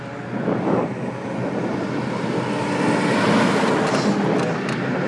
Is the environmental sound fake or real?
real